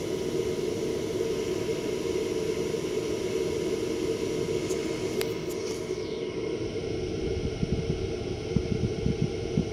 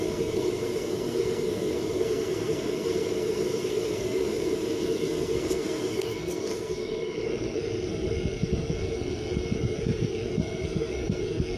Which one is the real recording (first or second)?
first